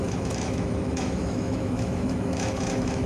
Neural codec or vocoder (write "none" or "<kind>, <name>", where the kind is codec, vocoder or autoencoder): autoencoder, DAC-VAE